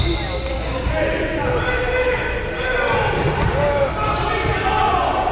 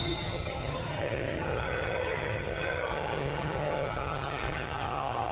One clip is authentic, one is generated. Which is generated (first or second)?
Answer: second